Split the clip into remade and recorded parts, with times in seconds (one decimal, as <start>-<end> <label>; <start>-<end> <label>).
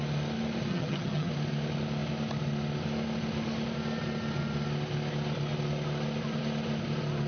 0.0-0.7 recorded; 0.7-1.3 remade; 1.3-7.3 recorded